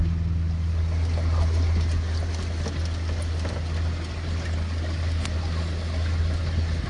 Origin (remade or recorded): recorded